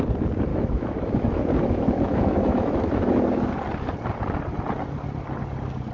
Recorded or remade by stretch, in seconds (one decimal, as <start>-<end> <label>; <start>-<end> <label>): 0.0-0.5 recorded; 0.5-3.5 remade; 3.5-5.9 recorded